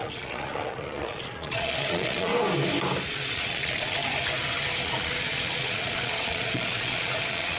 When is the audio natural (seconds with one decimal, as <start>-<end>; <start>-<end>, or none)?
2.3-3.1; 4.0-4.8